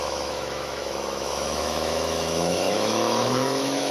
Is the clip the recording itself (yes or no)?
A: no